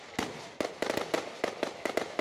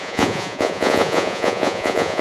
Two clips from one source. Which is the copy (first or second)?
second